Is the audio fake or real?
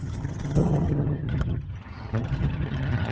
fake